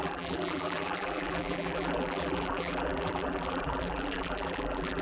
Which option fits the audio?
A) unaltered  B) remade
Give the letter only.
B